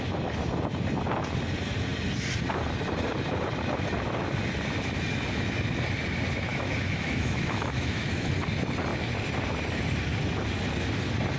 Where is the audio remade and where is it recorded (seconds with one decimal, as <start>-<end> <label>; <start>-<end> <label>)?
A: 0.0-6.5 recorded; 6.5-8.3 remade; 8.3-11.4 recorded